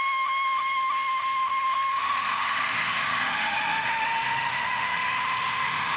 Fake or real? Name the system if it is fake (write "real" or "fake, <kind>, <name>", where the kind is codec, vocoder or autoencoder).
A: fake, autoencoder, DAC-VAE